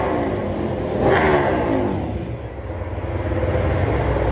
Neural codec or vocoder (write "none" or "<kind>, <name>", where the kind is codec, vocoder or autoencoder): none